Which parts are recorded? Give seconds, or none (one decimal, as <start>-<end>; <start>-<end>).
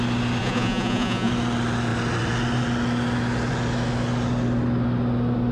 0.0-0.4; 1.3-5.5